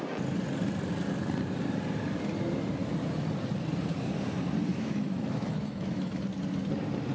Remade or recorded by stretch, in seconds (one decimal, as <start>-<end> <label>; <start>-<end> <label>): 0.0-4.7 recorded; 4.7-6.1 remade; 6.1-7.1 recorded